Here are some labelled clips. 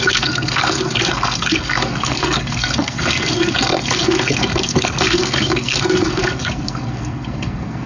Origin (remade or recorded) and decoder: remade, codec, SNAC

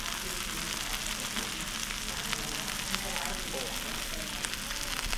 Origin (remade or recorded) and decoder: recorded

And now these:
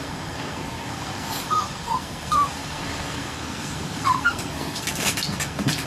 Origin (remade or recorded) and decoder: remade, codec, SNAC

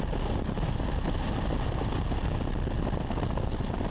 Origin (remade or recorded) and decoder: recorded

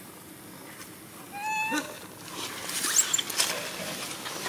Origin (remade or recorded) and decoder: recorded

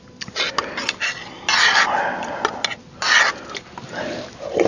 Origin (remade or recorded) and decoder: recorded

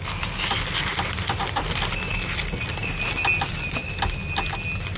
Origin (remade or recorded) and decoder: recorded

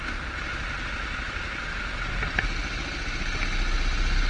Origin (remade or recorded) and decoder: recorded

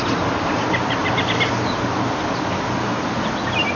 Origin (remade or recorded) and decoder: recorded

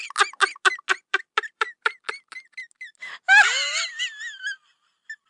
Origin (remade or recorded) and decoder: recorded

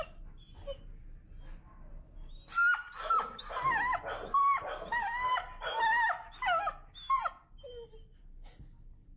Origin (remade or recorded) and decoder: recorded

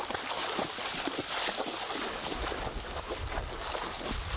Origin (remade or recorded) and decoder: recorded